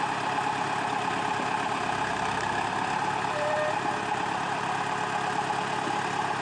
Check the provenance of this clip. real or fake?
real